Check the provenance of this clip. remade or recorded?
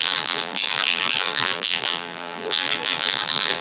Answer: remade